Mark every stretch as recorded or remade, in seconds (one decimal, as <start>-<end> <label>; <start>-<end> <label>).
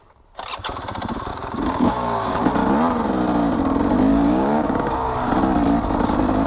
0.0-1.3 recorded; 1.3-2.5 remade; 2.5-4.1 recorded; 4.1-5.3 remade; 5.3-6.5 recorded